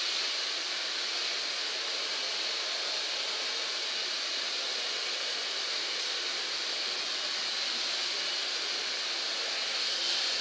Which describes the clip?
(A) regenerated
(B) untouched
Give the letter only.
B